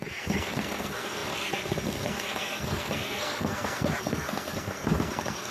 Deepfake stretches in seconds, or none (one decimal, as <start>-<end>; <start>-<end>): 0.0-5.5